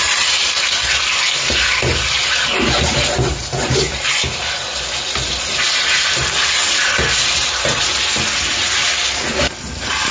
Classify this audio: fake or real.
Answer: real